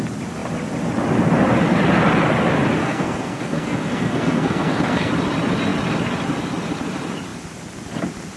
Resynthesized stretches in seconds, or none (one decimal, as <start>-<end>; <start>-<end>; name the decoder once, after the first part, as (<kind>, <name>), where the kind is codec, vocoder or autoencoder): 2.8-5.1 (codec, SNAC)